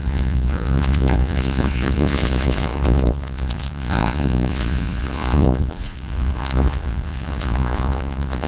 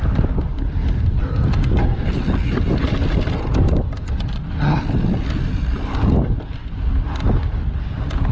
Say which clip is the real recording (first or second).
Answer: second